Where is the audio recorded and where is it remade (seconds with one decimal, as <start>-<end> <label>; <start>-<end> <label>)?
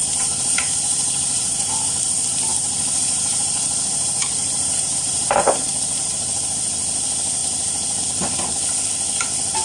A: 0.0-1.7 remade; 1.7-2.5 recorded; 2.5-6.4 remade; 6.4-7.4 recorded; 7.4-8.0 remade; 8.0-9.6 recorded